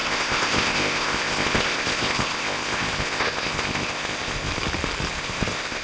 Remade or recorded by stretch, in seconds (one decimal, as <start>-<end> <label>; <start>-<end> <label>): 0.0-4.5 remade; 4.5-5.1 recorded; 5.1-5.8 remade